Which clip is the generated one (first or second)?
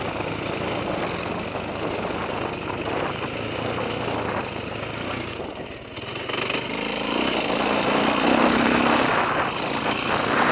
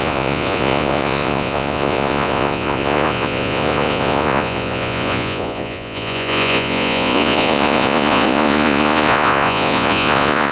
second